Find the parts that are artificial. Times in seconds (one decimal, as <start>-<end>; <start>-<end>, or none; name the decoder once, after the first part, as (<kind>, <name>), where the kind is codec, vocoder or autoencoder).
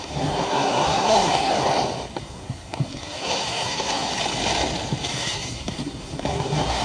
0.0-1.6 (codec, SNAC); 2.2-4.1; 5.1-6.8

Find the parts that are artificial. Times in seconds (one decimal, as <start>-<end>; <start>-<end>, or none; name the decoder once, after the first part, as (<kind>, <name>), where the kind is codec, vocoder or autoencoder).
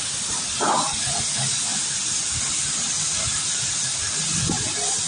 none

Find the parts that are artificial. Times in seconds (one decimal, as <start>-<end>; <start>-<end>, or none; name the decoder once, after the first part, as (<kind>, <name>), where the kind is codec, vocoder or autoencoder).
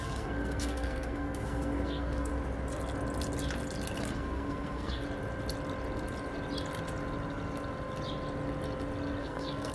0.0-2.3 (codec, SNAC); 4.0-5.0; 9.2-9.7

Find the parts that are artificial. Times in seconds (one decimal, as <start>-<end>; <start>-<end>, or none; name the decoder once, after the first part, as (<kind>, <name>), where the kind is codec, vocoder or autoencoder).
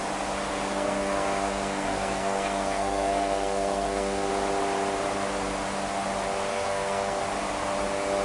0.7-4.3 (codec, SNAC); 6.5-7.2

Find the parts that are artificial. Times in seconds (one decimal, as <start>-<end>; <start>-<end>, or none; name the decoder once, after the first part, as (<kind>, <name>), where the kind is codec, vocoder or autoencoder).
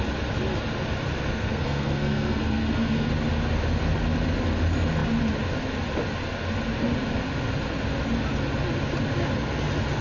1.3-3.1 (codec, SNAC)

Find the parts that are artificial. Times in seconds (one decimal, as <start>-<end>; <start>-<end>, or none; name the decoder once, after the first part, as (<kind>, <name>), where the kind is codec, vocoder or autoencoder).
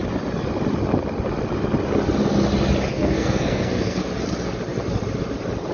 2.9-4.1 (codec, SNAC)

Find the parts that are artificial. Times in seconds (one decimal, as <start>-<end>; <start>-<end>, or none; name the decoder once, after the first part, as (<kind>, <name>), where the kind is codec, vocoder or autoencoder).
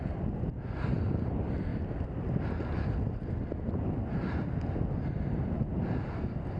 none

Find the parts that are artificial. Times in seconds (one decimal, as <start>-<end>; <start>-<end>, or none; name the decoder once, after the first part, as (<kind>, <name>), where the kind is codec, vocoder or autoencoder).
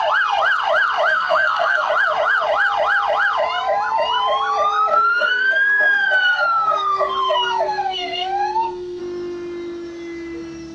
1.1-1.9 (codec, SNAC); 4.9-9.0